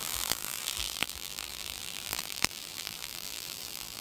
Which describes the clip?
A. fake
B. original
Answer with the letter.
A